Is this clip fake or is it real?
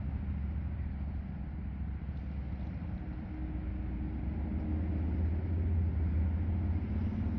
real